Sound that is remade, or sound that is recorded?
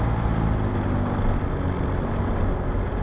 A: recorded